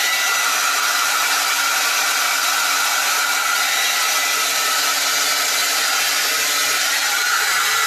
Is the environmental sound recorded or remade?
recorded